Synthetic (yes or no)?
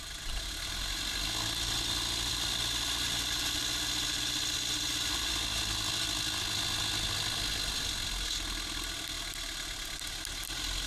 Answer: no